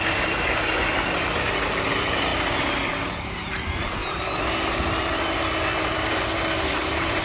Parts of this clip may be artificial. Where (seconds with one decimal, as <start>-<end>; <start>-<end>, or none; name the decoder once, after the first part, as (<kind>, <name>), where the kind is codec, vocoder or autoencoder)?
none